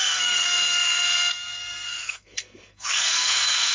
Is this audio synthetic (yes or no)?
yes